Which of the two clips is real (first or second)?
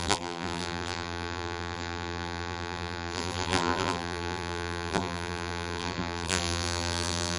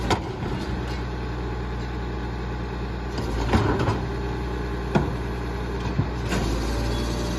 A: second